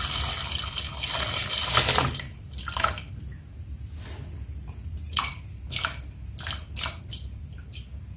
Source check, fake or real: real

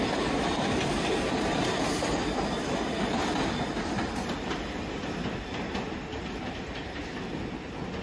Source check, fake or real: real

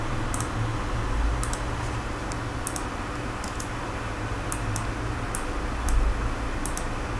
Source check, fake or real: real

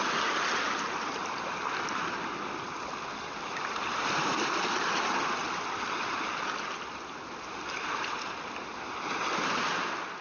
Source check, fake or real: real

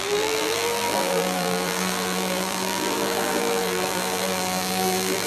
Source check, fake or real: fake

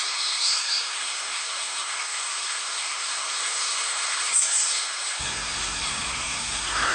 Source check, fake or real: fake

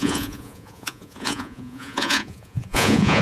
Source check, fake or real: fake